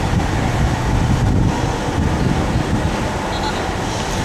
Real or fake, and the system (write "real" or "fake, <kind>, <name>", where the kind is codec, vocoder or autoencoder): real